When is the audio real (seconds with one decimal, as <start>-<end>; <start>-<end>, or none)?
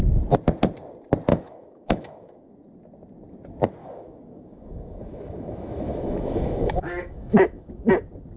0.0-1.3; 2.5-3.8; 7.9-8.4